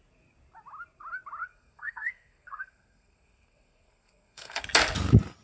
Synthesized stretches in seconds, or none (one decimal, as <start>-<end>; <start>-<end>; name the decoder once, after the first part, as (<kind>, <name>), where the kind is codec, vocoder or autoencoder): 1.4-4.6 (codec, SNAC)